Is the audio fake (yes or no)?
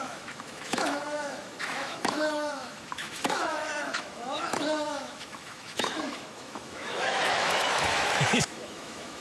yes